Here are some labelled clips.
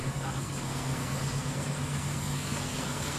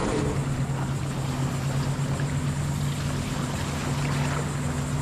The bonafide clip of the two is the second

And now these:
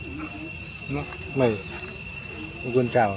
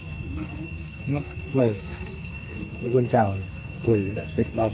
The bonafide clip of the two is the first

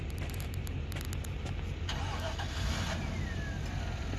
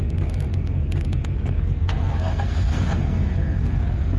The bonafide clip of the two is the first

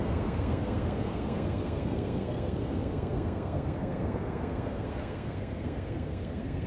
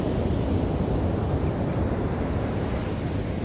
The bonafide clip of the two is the second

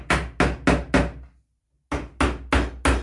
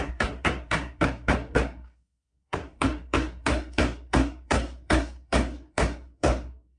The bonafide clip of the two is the first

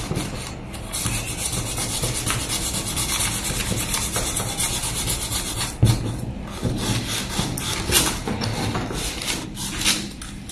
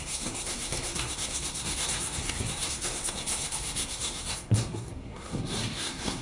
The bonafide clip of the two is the first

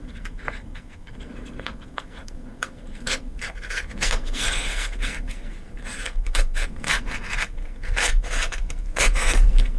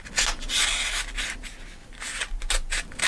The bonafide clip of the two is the second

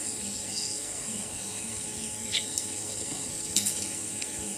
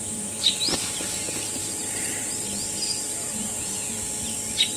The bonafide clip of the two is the second